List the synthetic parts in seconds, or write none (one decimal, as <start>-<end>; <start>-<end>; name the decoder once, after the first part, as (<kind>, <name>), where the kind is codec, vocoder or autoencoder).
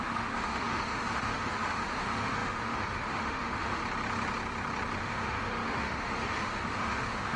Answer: 0.0-3.8 (autoencoder, DAC-VAE); 5.0-7.4